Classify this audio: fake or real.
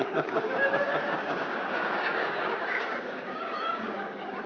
fake